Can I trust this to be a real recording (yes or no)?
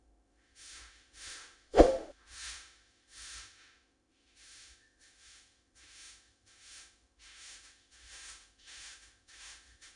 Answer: no